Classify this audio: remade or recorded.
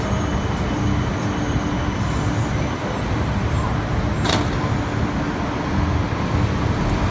recorded